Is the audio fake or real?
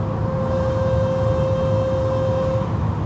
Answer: real